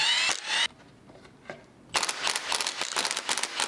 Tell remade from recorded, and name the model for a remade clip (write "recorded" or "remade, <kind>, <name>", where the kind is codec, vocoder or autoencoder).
recorded